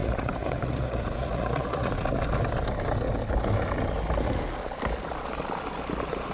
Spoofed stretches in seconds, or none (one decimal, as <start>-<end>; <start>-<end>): 0.0-1.9